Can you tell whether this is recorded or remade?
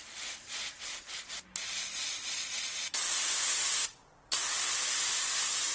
recorded